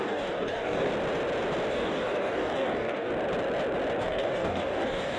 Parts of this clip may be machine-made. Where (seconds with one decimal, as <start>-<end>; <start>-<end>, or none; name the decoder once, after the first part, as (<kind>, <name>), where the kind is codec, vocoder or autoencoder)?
0.0-0.9 (codec, DAC); 1.7-3.1; 4.0-5.2